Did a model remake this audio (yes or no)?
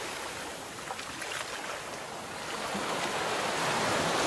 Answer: no